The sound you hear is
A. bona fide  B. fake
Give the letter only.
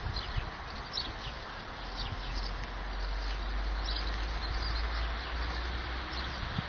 A